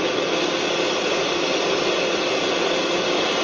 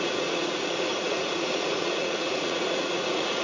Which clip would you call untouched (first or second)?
first